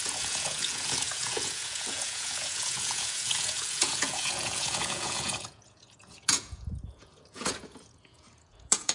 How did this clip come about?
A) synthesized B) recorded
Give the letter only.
A